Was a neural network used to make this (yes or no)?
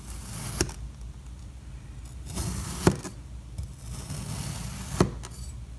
no